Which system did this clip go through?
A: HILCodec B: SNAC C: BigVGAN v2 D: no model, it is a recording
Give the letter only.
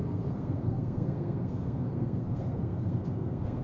B